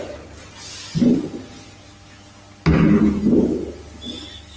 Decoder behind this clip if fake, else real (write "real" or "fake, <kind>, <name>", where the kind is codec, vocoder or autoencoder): real